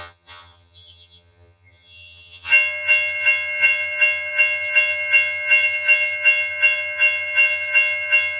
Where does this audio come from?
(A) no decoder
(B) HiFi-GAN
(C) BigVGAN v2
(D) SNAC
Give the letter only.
B